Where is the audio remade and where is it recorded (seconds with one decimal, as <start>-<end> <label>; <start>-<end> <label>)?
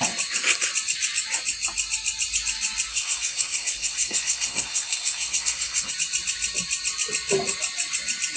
0.0-2.9 recorded; 2.9-5.9 remade; 5.9-8.4 recorded